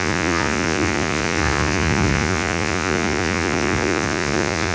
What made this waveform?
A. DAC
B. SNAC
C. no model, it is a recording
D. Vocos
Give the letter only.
D